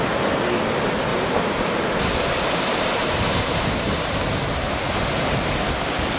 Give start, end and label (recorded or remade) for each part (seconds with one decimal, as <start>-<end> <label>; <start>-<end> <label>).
0.0-1.1 recorded; 1.1-4.3 remade; 4.3-6.2 recorded